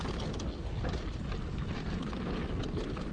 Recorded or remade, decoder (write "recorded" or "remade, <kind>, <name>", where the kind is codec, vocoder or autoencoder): recorded